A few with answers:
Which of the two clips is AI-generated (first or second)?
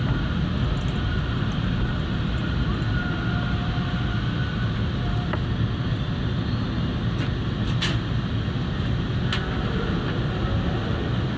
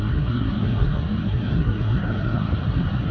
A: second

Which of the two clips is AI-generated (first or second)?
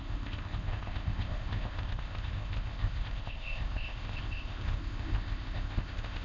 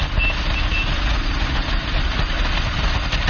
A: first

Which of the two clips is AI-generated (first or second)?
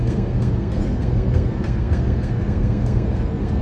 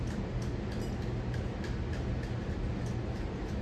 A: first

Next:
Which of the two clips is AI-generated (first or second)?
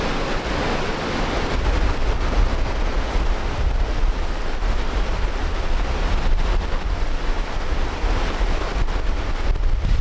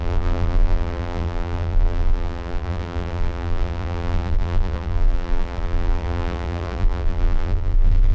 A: second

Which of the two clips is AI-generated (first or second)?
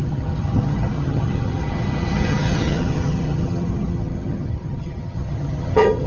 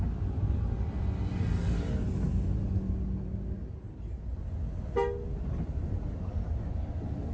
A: first